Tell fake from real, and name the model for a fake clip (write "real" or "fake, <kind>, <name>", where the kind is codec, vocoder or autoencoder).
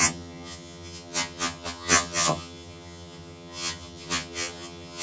fake, vocoder, HiFi-GAN